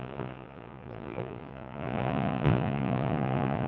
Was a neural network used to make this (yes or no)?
yes